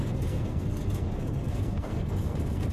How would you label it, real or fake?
fake